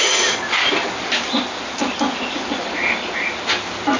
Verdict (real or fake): real